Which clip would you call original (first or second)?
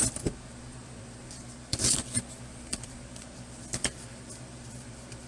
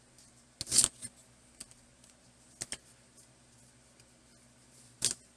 second